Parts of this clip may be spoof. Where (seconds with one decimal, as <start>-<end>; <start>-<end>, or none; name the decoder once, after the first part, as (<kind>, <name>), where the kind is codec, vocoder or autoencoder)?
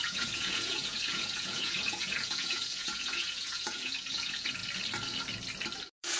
0.0-4.6 (vocoder, Vocos)